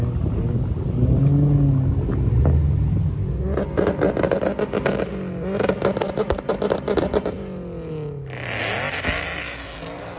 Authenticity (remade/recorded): recorded